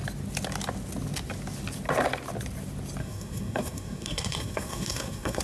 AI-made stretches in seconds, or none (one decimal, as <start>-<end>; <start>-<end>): 3.0-5.4